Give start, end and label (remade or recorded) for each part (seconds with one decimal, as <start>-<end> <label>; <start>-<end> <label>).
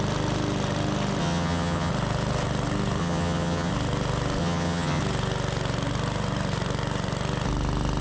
0.0-1.2 recorded; 1.2-1.9 remade; 1.9-3.0 recorded; 3.0-3.7 remade; 3.7-4.4 recorded; 4.4-5.0 remade; 5.0-8.0 recorded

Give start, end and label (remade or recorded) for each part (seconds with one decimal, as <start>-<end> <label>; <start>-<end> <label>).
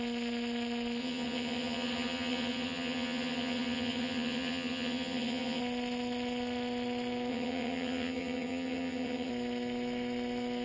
0.0-1.0 recorded; 1.0-5.6 remade; 5.6-7.3 recorded; 7.3-9.3 remade; 9.3-10.6 recorded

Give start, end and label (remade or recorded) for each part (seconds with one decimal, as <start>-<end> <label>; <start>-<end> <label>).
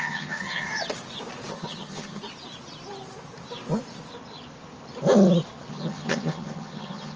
0.0-0.7 remade; 0.7-1.5 recorded; 1.5-2.2 remade; 2.2-5.7 recorded; 5.7-7.2 remade